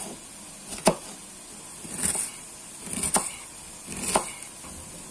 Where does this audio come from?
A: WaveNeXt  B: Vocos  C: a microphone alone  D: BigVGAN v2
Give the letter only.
C